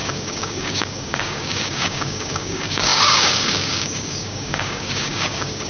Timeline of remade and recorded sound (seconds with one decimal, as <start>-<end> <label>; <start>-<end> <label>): 0.0-5.7 remade